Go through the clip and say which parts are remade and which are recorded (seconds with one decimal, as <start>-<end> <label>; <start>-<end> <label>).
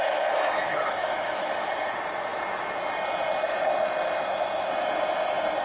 0.0-0.7 recorded; 0.7-1.7 remade; 1.7-5.6 recorded